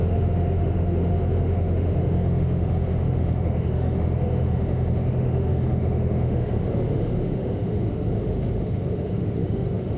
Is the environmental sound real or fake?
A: fake